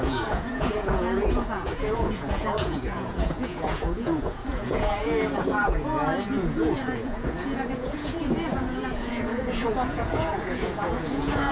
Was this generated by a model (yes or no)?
yes